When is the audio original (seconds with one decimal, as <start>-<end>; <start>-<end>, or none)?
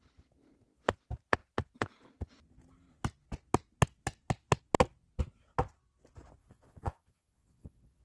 0.0-6.4